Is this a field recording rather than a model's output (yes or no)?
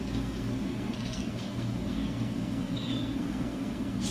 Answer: no